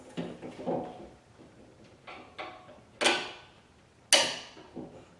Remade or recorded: recorded